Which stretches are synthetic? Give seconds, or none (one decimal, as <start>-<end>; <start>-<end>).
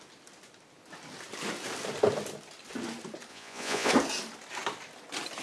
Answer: 3.3-3.9